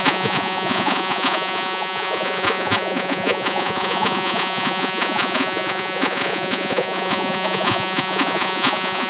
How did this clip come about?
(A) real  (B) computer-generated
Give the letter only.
B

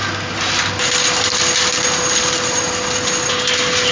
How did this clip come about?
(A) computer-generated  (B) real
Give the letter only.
B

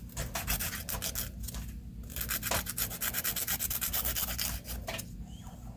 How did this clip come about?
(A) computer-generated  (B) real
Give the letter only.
B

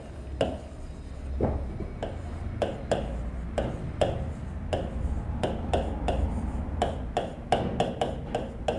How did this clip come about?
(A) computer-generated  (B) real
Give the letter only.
B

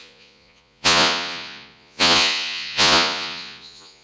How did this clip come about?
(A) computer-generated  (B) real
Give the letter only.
A